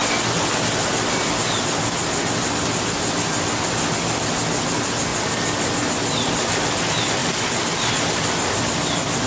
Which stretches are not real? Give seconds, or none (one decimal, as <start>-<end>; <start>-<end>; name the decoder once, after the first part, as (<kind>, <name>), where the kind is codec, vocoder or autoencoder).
none